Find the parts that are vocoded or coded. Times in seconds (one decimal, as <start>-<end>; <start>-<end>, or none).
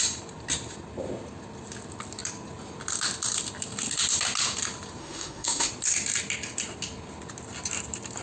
5.0-5.7